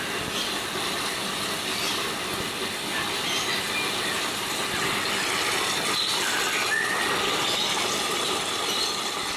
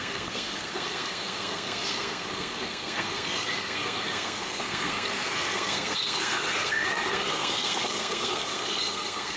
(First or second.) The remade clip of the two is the second